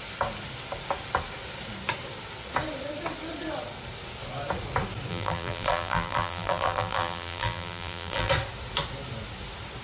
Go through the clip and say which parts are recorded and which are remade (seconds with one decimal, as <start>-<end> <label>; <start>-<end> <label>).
0.0-5.1 recorded; 5.1-8.3 remade; 8.3-9.8 recorded

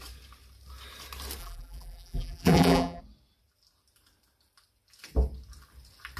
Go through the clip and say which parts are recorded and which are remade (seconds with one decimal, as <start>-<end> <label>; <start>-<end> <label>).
0.0-1.4 recorded; 1.4-3.0 remade; 3.0-6.2 recorded

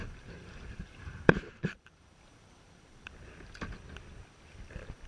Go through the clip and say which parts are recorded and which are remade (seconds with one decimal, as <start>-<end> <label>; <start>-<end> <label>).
0.0-3.1 remade; 3.1-5.1 recorded

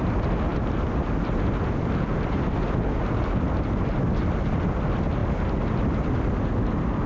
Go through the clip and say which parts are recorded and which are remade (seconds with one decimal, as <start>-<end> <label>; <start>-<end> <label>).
0.0-7.1 recorded

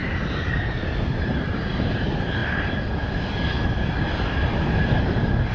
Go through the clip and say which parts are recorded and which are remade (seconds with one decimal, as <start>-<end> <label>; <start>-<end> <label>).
0.0-1.1 recorded; 1.1-2.4 remade; 2.4-5.5 recorded

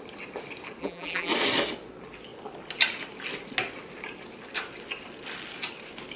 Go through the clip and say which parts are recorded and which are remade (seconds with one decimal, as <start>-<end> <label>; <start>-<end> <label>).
0.0-0.8 recorded; 0.8-1.3 remade; 1.3-6.2 recorded

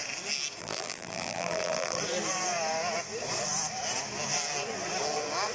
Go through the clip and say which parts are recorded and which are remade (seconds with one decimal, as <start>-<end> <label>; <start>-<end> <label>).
0.0-0.6 recorded; 0.6-2.0 remade; 2.0-5.5 recorded

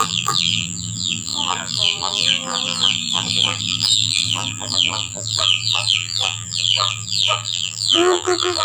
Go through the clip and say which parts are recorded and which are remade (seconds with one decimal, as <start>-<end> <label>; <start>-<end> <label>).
0.0-8.6 remade